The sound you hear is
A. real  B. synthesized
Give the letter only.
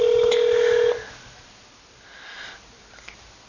A